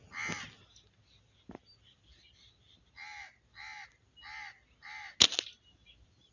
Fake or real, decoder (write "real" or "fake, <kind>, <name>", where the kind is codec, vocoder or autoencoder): real